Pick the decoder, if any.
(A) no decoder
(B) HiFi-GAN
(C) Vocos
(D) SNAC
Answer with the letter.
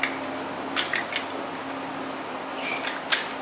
A